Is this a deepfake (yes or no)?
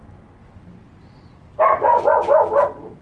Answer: no